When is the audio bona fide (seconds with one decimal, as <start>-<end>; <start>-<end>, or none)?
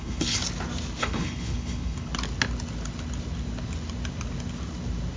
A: 0.4-1.0; 2.1-5.2